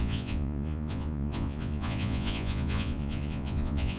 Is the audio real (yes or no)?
no